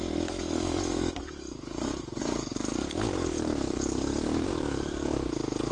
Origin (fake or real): fake